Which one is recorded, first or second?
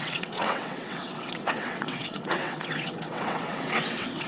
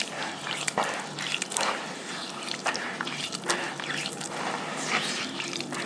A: second